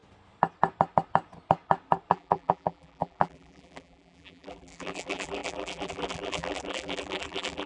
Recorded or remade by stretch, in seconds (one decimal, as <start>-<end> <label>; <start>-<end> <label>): 0.0-2.1 recorded; 2.1-7.7 remade